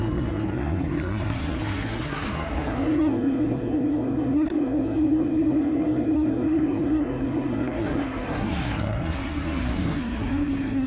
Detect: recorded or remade remade